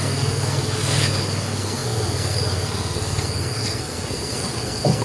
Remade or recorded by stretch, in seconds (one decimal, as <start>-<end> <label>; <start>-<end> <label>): 0.0-5.0 remade